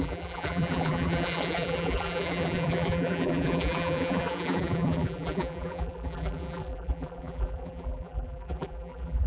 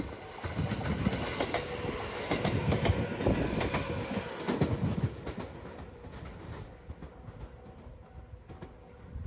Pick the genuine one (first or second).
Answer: second